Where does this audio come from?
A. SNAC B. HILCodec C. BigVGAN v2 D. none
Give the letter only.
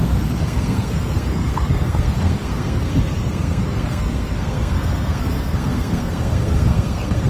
A